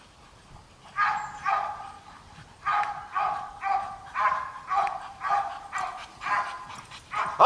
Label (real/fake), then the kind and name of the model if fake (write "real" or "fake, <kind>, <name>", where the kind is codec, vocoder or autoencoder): real